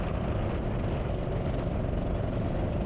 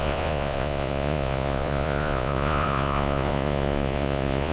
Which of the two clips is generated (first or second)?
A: second